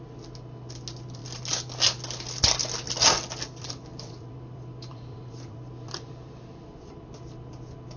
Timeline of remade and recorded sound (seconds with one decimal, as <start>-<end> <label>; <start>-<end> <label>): 0.0-3.9 recorded; 3.9-6.8 remade; 6.8-8.0 recorded